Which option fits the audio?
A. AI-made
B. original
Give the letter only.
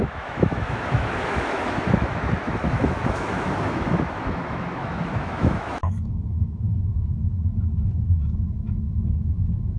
A